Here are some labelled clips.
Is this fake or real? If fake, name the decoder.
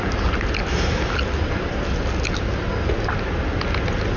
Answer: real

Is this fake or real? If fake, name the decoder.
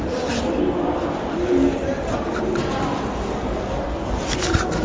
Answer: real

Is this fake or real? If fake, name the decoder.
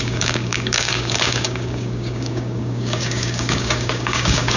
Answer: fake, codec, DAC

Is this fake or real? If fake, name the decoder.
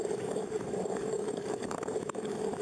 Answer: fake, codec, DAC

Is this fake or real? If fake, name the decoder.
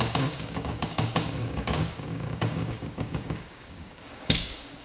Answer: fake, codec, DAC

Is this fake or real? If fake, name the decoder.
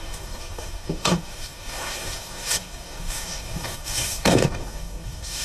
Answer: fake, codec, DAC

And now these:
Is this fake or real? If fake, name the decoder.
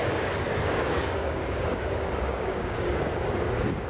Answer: fake, codec, DAC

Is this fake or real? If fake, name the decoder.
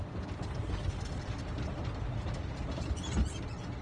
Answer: real